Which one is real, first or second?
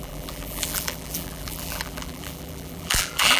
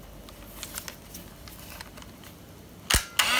second